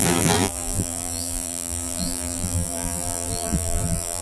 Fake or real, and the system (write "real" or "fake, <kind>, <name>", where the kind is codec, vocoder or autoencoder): fake, vocoder, BigVGAN v2